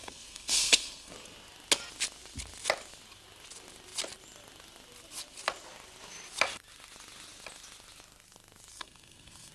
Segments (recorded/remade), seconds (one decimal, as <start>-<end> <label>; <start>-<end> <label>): 0.0-1.1 remade; 1.1-8.7 recorded; 8.7-9.5 remade